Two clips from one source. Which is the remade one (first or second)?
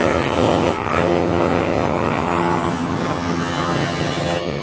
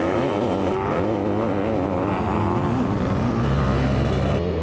first